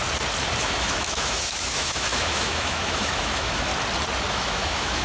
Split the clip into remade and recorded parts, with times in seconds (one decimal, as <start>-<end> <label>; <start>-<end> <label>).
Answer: 0.0-0.6 recorded; 0.6-3.7 remade; 3.7-4.3 recorded; 4.3-5.0 remade